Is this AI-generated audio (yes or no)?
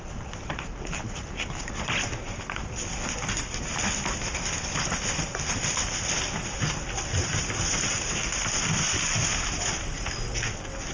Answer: no